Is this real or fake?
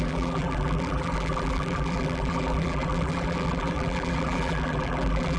fake